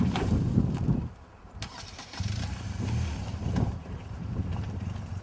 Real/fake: fake